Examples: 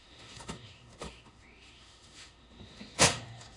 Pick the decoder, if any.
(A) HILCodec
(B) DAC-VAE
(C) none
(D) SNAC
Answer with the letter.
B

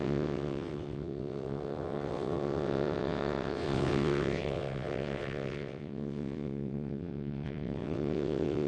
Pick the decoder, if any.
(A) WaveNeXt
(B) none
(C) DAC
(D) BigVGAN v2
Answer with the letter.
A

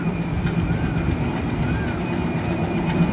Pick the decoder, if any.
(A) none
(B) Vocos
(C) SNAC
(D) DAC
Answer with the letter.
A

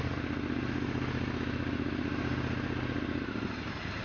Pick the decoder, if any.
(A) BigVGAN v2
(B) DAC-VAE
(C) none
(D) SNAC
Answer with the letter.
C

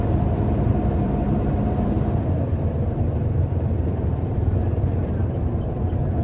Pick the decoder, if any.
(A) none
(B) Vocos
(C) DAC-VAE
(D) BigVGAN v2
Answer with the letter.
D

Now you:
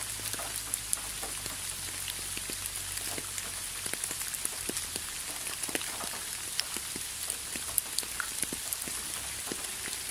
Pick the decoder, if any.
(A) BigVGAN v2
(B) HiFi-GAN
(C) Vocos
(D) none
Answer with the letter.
D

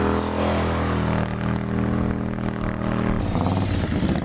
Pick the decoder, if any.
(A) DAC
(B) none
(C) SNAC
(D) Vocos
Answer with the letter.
B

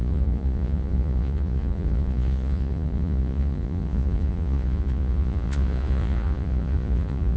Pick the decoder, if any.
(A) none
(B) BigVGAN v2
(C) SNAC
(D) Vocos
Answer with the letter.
D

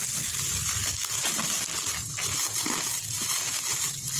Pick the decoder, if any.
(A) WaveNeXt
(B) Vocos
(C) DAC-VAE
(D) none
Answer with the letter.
D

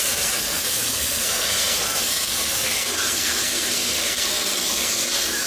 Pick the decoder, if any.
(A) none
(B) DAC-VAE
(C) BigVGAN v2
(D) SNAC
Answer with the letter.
D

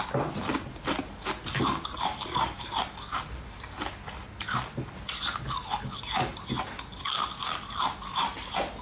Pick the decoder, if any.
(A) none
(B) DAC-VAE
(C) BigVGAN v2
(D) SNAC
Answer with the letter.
A